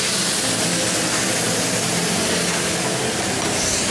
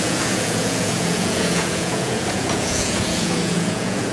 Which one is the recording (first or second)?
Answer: first